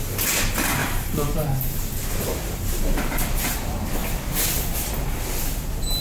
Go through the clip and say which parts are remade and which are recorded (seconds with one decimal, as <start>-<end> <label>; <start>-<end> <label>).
0.0-0.8 recorded; 0.8-2.8 remade; 2.8-6.0 recorded